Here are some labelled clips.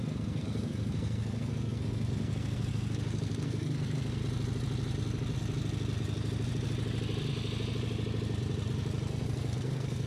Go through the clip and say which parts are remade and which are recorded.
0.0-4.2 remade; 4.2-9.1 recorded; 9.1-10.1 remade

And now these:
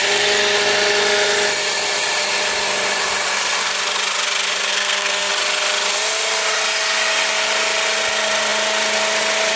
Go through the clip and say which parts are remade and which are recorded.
0.0-4.7 recorded; 4.7-5.3 remade; 5.3-9.6 recorded

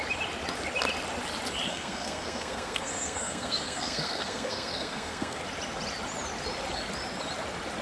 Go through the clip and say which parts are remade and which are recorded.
0.0-1.7 recorded; 1.7-5.4 remade; 5.4-7.8 recorded

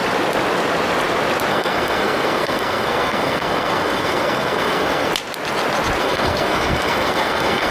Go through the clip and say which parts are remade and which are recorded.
0.0-1.5 recorded; 1.5-5.1 remade; 5.1-6.0 recorded; 6.0-7.7 remade

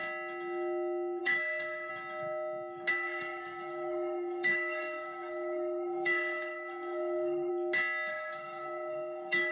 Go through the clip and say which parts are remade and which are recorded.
0.0-1.2 recorded; 1.2-1.9 remade; 1.9-2.9 recorded; 2.9-7.5 remade; 7.5-8.1 recorded; 8.1-9.5 remade

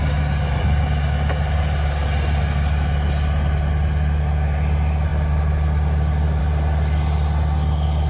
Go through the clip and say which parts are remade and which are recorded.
0.0-8.1 recorded

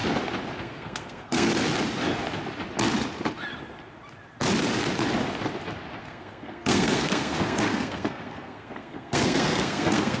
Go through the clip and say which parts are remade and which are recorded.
0.0-0.6 recorded; 0.6-1.5 remade; 1.5-6.0 recorded; 6.0-10.2 remade